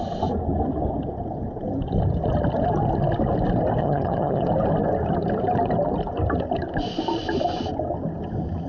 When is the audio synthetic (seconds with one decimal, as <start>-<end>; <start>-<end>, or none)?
3.8-4.5